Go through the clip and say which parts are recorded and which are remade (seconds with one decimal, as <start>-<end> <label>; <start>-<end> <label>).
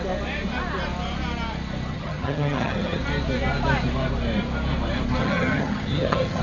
0.0-1.9 recorded; 1.9-3.0 remade; 3.0-5.2 recorded; 5.2-6.4 remade